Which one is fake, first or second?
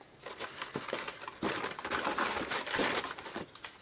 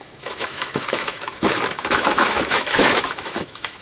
second